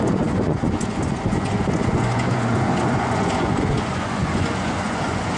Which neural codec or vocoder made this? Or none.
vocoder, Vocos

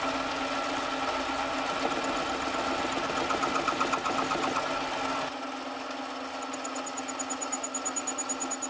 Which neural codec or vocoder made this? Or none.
none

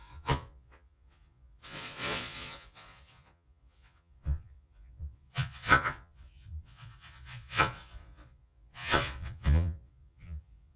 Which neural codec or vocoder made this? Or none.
vocoder, Vocos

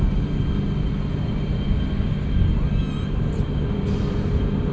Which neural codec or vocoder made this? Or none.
none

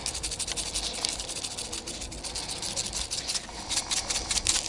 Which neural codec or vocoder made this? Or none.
none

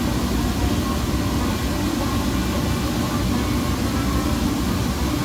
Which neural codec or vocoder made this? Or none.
none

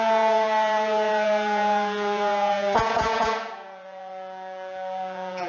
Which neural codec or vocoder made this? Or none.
vocoder, Vocos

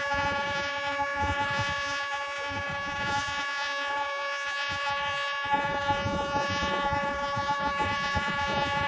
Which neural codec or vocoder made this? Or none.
vocoder, Vocos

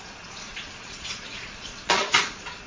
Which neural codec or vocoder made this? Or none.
vocoder, Vocos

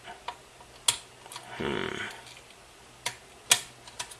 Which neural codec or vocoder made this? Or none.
none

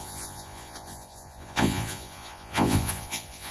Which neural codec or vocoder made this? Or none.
vocoder, Vocos